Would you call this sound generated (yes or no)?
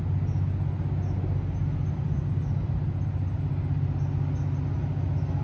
no